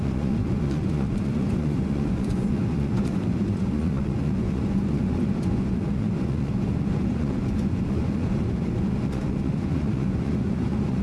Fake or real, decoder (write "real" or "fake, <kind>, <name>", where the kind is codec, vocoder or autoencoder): fake, vocoder, Vocos